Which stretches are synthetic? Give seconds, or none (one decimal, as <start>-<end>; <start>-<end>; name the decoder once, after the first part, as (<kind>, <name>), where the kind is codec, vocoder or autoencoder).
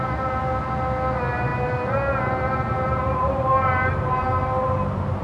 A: none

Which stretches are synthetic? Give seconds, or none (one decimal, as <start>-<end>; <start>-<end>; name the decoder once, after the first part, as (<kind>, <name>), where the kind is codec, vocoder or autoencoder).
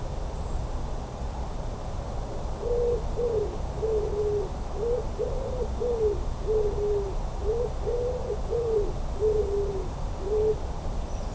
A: 8.2-8.8 (vocoder, Vocos)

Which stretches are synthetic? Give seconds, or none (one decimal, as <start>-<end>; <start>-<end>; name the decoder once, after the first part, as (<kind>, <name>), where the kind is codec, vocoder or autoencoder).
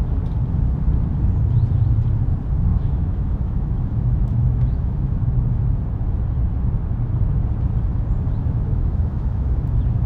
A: 2.7-5.6 (autoencoder, DAC-VAE); 8.4-9.7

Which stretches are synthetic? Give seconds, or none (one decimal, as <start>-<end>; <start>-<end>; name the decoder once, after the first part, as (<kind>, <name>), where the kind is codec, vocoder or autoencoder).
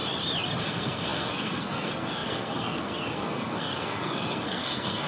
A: 0.6-5.1 (codec, SNAC)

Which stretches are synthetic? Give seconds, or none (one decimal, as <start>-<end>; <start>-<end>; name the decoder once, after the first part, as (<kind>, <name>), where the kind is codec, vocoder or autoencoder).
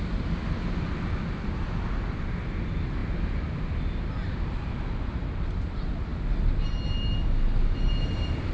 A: none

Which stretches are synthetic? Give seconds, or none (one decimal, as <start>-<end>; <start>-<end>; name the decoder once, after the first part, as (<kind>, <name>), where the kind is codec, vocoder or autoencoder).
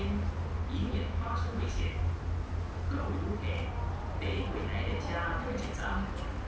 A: 0.8-1.9 (autoencoder, DAC-VAE)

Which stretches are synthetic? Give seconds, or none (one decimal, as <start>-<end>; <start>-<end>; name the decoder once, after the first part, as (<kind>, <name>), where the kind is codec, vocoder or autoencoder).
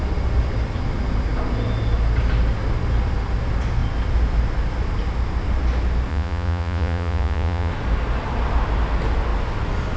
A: 6.1-7.7 (vocoder, Vocos)